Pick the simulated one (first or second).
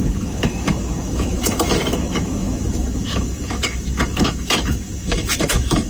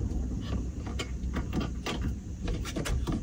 first